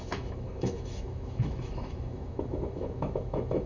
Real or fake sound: fake